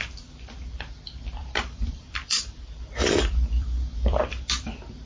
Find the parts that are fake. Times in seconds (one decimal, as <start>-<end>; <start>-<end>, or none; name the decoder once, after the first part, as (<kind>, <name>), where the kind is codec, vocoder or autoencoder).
1.4-4.2 (vocoder, BigVGAN v2)